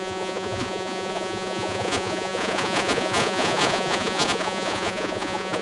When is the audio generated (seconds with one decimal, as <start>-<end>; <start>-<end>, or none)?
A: 0.0-5.6